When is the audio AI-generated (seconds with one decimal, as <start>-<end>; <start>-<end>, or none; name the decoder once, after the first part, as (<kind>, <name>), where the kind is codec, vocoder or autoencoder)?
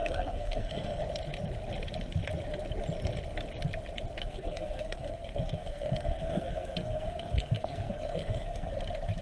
0.0-1.0 (codec, SNAC); 4.2-8.7